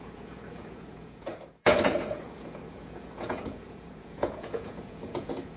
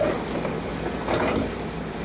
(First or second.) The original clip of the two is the second